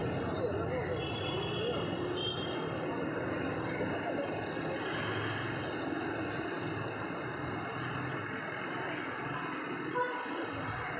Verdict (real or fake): real